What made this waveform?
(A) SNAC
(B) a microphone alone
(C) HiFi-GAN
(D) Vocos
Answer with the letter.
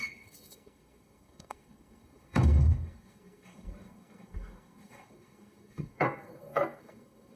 A